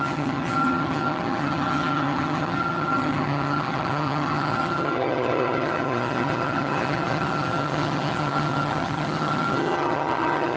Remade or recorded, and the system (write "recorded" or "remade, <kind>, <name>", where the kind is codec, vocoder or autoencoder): remade, vocoder, HiFi-GAN